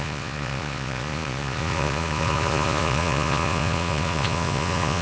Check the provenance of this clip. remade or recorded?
remade